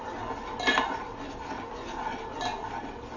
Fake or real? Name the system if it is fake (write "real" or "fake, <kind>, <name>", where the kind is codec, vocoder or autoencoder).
real